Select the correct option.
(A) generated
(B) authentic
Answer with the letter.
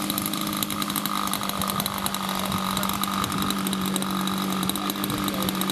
B